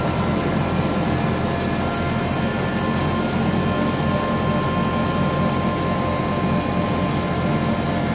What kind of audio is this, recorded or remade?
recorded